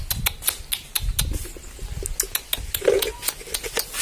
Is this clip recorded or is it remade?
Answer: recorded